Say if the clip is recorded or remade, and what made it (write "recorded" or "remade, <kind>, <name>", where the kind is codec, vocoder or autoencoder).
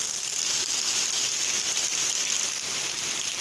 recorded